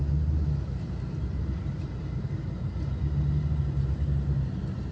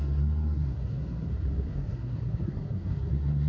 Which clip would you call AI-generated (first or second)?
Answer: second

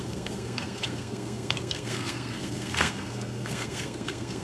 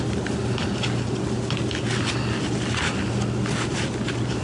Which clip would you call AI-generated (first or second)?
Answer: first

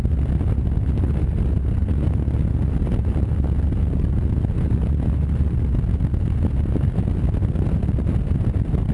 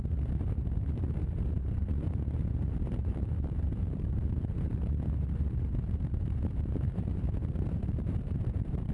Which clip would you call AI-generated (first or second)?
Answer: second